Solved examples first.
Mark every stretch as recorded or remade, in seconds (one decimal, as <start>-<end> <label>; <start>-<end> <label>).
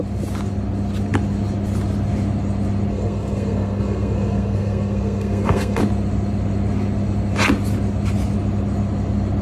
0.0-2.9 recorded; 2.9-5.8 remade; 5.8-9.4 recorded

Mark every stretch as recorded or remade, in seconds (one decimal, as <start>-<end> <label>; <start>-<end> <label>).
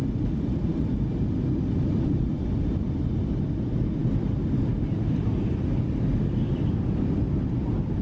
0.0-8.0 recorded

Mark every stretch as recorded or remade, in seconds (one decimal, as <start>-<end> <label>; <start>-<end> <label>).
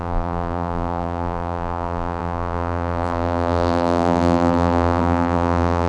0.0-5.9 remade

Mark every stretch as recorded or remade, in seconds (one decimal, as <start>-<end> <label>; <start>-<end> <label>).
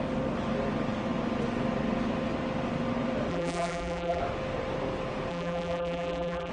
0.0-3.3 recorded; 3.3-4.2 remade; 4.2-5.3 recorded; 5.3-6.5 remade